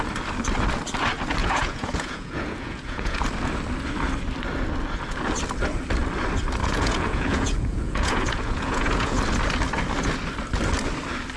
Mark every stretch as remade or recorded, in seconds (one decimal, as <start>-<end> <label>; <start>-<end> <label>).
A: 0.0-1.4 recorded; 1.4-3.2 remade; 3.2-6.6 recorded; 6.6-9.2 remade; 9.2-11.4 recorded